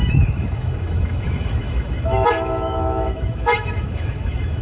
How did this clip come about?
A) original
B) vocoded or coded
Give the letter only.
B